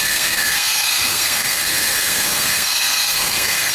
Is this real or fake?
fake